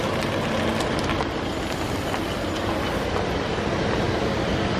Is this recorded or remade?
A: recorded